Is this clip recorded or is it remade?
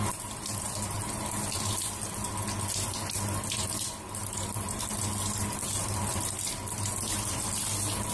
recorded